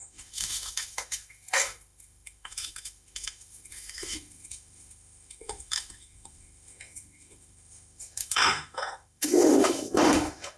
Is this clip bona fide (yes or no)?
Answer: no